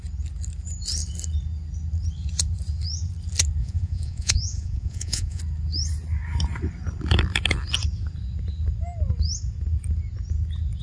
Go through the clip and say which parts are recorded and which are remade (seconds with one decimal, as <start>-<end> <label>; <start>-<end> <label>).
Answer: 0.0-3.6 recorded; 3.6-5.4 remade; 5.4-10.8 recorded